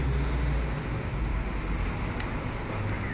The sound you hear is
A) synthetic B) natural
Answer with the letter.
B